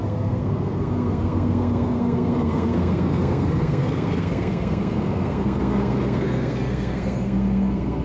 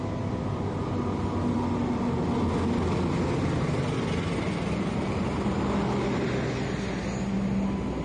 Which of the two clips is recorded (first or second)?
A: second